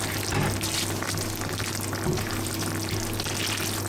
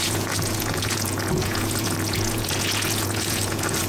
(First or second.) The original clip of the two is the first